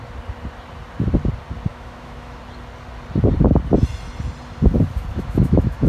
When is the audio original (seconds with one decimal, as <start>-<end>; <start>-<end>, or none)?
0.0-1.7; 2.4-5.1

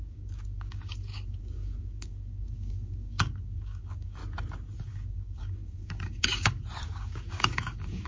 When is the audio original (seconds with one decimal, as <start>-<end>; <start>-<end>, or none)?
4.2-4.8

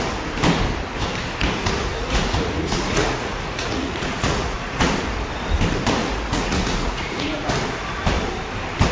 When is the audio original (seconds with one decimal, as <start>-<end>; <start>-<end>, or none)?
0.0-1.9; 4.9-6.0; 7.5-8.9

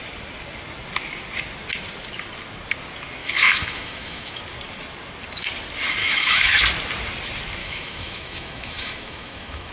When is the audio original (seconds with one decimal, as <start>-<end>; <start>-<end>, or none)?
0.0-3.2; 4.4-6.0; 6.6-7.6

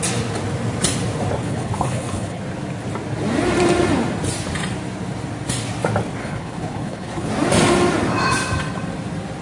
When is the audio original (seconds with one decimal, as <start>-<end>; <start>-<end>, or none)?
0.0-1.4; 2.4-6.2; 7.3-9.4